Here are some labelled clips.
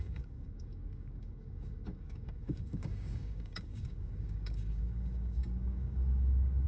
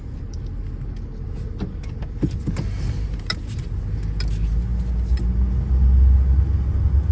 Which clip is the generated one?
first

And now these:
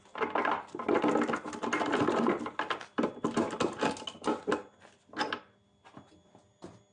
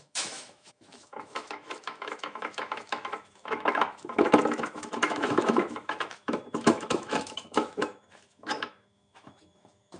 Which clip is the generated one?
second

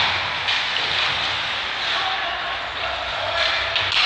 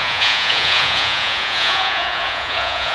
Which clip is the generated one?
second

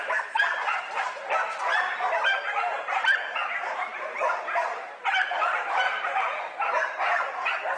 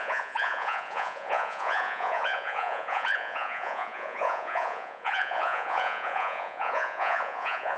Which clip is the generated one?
second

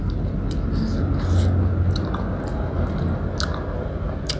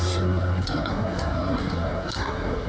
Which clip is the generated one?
second